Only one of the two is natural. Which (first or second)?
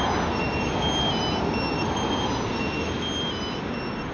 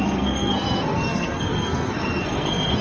first